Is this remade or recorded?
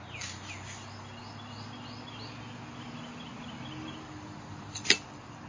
recorded